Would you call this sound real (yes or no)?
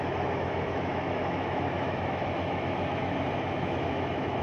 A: no